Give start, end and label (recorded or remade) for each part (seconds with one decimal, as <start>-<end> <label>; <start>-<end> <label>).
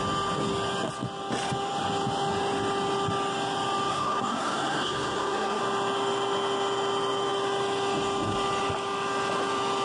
0.0-3.9 recorded; 3.9-5.6 remade; 5.6-9.8 recorded